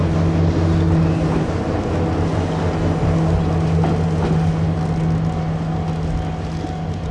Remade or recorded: recorded